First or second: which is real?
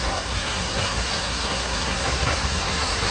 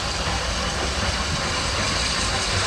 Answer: second